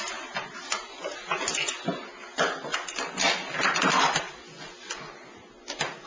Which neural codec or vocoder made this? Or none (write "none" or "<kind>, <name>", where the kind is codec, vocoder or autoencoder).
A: none